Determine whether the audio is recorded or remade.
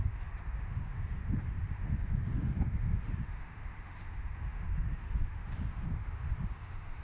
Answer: remade